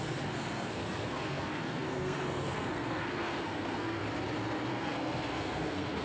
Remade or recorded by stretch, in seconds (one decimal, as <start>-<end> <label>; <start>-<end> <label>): 0.0-4.0 remade; 4.0-4.7 recorded; 4.7-6.0 remade